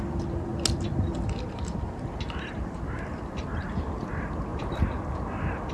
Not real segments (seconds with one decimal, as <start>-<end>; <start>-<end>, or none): none